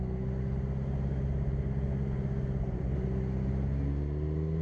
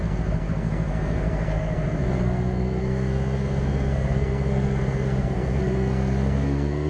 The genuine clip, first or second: first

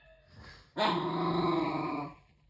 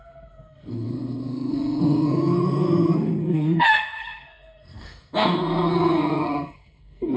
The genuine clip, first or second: first